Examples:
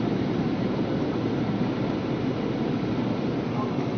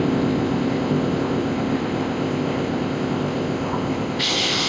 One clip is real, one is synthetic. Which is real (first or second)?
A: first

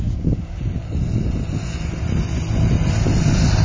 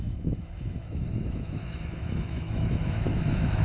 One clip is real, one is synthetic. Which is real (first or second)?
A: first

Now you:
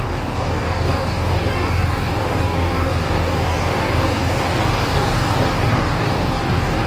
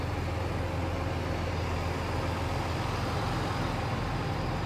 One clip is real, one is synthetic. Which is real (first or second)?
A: second